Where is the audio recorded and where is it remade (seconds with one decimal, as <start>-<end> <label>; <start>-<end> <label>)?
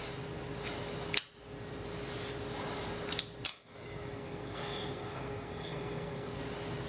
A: 0.0-3.5 recorded; 3.5-6.4 remade; 6.4-6.9 recorded